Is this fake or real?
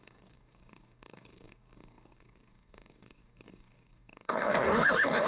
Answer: fake